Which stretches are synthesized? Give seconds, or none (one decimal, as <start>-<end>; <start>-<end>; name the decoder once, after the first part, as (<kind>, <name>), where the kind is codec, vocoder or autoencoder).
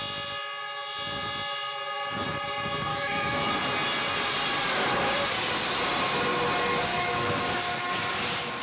2.9-3.5 (autoencoder, DAC-VAE); 6.9-7.4